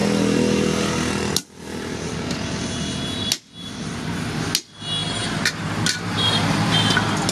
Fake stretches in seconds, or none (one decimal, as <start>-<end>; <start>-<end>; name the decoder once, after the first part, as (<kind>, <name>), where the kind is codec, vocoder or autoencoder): 5.0-6.7 (vocoder, BigVGAN v2)